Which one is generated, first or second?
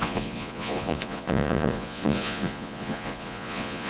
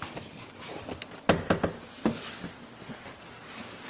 first